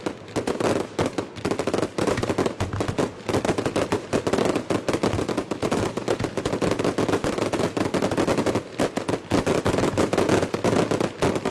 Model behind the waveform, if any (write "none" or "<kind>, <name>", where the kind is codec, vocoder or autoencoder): none